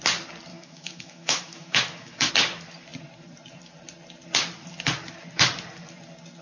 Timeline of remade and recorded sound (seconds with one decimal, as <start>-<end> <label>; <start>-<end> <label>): 0.0-0.5 recorded; 0.5-2.3 remade; 2.3-6.4 recorded

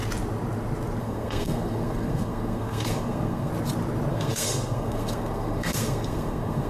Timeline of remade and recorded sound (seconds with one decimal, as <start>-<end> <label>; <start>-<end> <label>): 0.0-1.0 recorded; 1.0-3.5 remade; 3.5-4.1 recorded; 4.1-6.7 remade

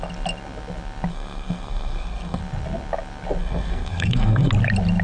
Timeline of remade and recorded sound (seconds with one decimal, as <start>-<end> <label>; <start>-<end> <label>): 0.0-1.1 recorded; 1.1-2.4 remade; 2.4-3.4 recorded; 3.4-4.5 remade; 4.5-5.0 recorded

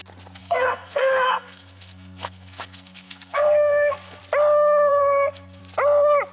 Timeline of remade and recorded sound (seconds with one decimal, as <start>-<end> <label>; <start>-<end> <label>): 0.0-0.4 recorded; 0.4-4.2 remade; 4.2-4.9 recorded; 4.9-5.6 remade; 5.6-6.3 recorded